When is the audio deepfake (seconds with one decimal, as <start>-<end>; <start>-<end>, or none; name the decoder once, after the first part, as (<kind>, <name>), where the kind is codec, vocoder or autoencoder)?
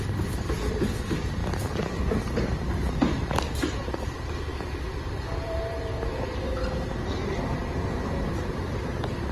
0.0-1.4 (vocoder, BigVGAN v2); 2.2-4.5; 5.1-9.3